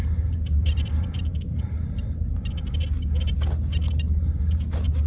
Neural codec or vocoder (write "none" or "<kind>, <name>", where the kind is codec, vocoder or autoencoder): none